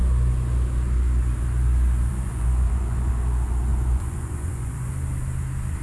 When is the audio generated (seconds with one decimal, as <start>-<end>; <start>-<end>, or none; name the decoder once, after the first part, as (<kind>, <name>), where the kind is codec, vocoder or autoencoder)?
2.1-3.1 (vocoder, Vocos); 3.7-4.9